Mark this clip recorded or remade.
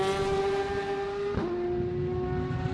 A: recorded